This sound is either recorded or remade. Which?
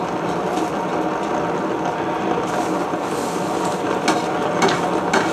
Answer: recorded